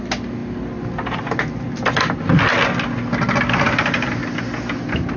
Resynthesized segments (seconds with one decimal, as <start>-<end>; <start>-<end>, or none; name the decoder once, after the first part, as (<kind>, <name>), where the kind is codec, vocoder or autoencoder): none